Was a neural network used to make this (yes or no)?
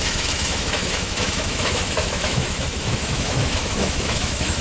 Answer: yes